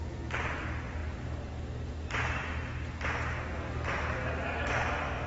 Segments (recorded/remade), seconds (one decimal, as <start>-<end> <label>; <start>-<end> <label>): 0.0-5.3 recorded